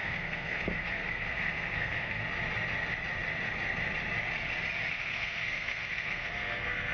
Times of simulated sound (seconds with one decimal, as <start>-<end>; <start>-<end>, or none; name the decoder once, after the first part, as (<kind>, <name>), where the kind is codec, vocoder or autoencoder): 0.0-2.2 (codec, SNAC); 4.9-6.9